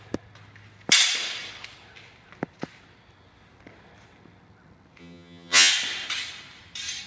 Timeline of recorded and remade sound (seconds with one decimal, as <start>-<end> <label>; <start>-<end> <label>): 0.0-5.0 recorded; 5.0-5.7 remade; 5.7-7.1 recorded